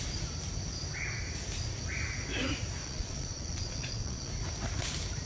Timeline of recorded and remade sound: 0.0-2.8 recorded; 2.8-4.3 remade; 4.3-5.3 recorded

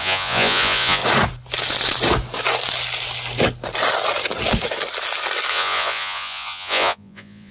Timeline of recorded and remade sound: 0.0-1.0 remade; 1.0-5.5 recorded; 5.5-7.5 remade